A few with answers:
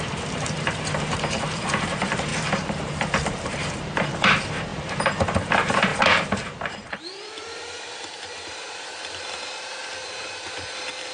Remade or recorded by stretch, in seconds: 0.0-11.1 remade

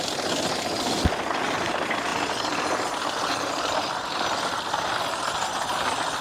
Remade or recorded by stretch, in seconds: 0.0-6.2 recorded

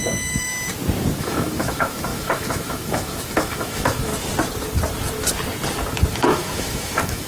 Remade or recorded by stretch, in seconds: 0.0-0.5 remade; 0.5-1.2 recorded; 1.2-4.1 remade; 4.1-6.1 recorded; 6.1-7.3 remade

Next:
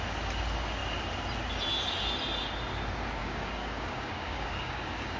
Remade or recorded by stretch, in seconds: 0.0-3.2 recorded; 3.2-5.2 remade

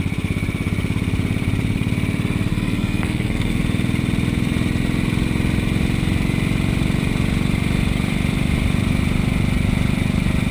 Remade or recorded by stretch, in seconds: 0.0-2.5 recorded; 2.5-3.6 remade; 3.6-10.5 recorded